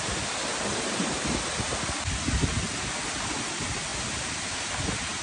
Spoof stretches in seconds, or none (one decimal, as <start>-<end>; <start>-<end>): none